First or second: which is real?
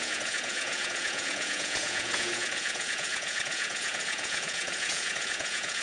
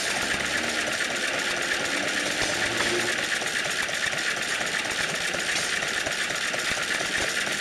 second